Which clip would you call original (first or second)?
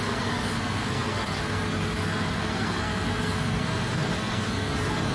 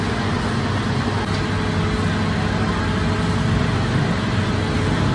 second